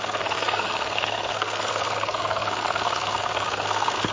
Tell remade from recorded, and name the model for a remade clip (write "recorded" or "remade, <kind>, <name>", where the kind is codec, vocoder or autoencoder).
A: remade, codec, SNAC